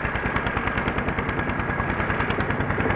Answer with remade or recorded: recorded